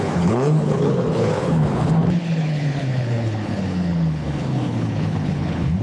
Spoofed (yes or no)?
yes